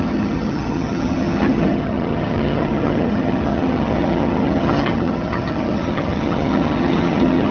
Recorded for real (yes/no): no